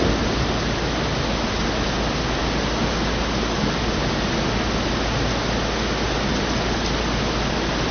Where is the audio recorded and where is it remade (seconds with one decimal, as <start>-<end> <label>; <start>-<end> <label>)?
0.0-7.9 recorded